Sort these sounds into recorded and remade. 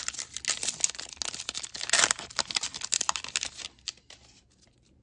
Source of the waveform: recorded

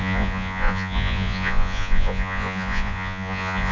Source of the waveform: remade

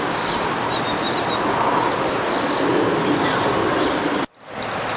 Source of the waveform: recorded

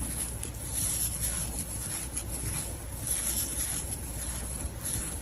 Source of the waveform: recorded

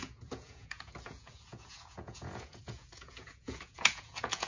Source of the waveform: remade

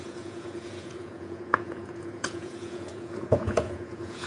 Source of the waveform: remade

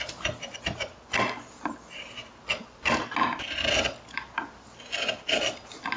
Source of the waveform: recorded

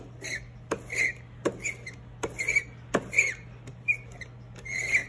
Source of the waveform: recorded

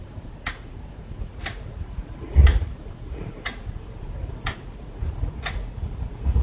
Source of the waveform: remade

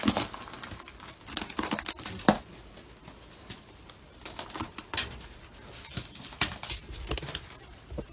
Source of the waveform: recorded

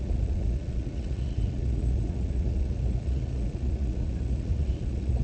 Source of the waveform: remade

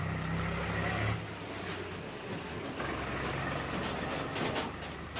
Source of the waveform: recorded